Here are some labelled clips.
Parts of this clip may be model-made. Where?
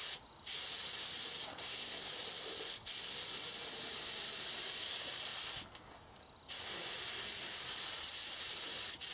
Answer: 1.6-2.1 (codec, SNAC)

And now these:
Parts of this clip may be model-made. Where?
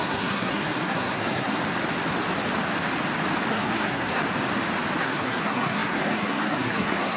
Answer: 0.0-1.6 (codec, SNAC); 3.5-4.2; 5.0-7.2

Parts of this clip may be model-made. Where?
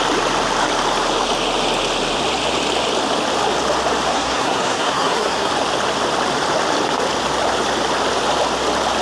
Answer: 4.1-5.5 (codec, SNAC)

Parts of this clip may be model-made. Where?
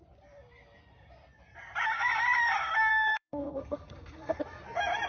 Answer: 2.9-4.4 (codec, SNAC)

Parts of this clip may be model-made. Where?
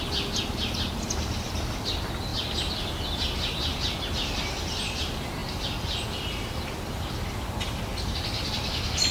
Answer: none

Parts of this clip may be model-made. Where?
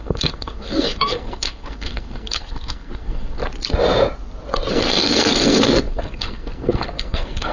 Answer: 0.0-3.4 (codec, SNAC); 4.7-7.5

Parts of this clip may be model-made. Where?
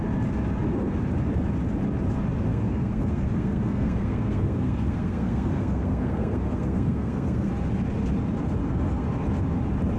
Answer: 2.5-7.5 (codec, SNAC); 8.6-9.1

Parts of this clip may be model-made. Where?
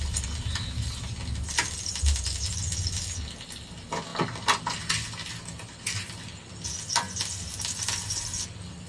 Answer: none